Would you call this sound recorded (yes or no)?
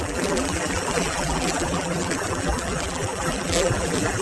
no